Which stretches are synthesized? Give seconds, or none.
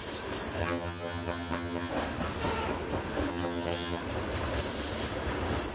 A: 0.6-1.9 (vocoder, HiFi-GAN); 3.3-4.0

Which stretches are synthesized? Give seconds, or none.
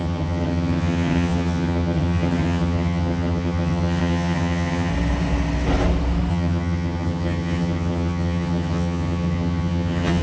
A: 0.0-4.9 (vocoder, HiFi-GAN); 6.3-10.2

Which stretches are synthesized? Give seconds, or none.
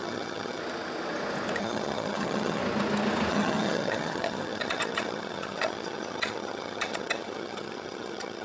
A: 0.0-0.6 (vocoder, HiFi-GAN); 1.6-2.6; 3.3-8.4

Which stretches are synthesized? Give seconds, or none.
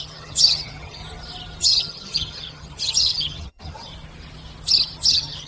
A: 0.0-1.0 (vocoder, HiFi-GAN); 1.6-3.9; 5.1-5.5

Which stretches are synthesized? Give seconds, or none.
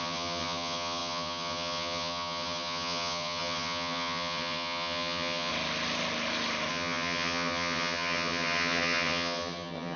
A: 0.0-5.5 (vocoder, HiFi-GAN); 6.7-10.0